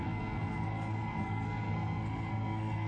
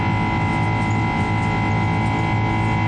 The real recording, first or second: second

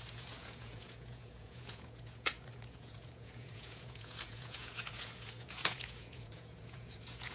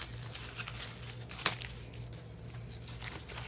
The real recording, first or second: second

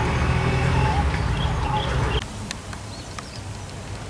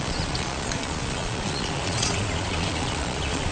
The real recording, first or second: first